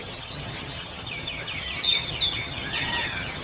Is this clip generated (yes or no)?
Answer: yes